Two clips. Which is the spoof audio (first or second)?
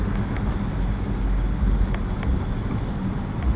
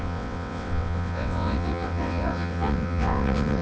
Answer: second